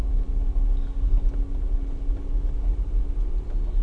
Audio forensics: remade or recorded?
recorded